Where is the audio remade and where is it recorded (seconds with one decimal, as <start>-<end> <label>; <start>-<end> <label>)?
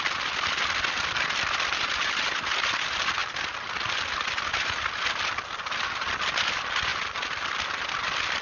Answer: 0.0-8.4 recorded